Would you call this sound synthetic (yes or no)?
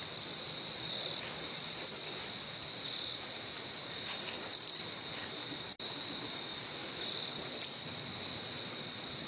no